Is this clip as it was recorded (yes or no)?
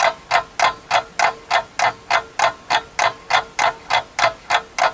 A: yes